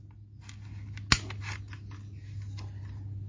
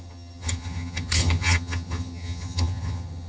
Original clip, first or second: first